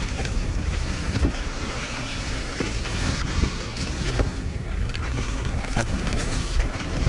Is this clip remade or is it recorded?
remade